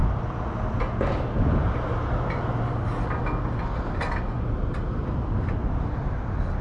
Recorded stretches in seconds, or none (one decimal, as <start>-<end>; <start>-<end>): 0.0-5.6